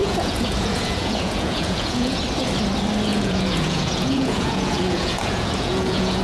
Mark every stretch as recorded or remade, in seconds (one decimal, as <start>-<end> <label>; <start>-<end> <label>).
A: 0.0-2.2 remade; 2.2-3.1 recorded; 3.1-6.2 remade

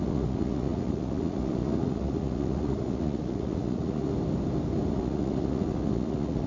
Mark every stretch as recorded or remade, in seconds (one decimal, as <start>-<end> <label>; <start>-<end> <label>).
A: 0.0-4.1 remade; 4.1-4.9 recorded; 4.9-6.5 remade

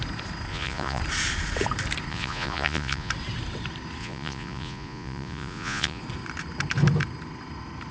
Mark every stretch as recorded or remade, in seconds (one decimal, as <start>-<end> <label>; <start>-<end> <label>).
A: 0.0-0.5 recorded; 0.5-1.0 remade; 1.0-2.1 recorded; 2.1-3.1 remade; 3.1-4.0 recorded; 4.0-6.0 remade; 6.0-7.9 recorded